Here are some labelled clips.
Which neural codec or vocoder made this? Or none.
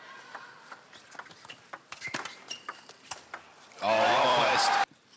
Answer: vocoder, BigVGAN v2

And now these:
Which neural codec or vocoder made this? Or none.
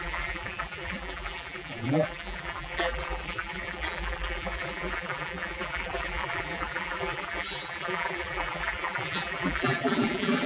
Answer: vocoder, BigVGAN v2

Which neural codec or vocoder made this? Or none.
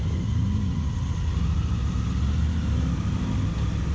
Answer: none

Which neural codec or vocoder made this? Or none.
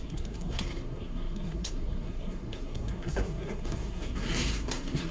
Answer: codec, SNAC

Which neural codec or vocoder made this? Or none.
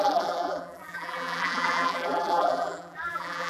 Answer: vocoder, BigVGAN v2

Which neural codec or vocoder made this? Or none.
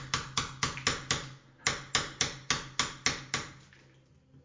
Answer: none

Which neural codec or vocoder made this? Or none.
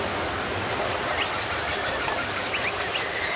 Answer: none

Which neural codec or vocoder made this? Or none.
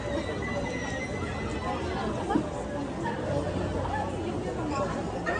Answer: none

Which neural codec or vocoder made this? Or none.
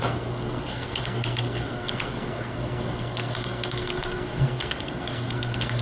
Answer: codec, SNAC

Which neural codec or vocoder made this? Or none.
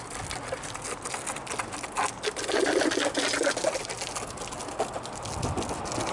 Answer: none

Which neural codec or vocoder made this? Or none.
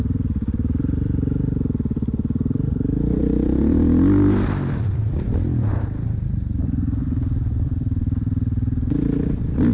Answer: vocoder, BigVGAN v2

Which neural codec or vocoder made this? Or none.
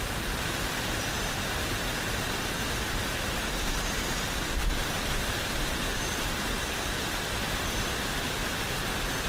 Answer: none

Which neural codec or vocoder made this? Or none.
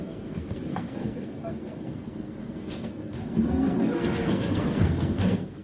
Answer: codec, SNAC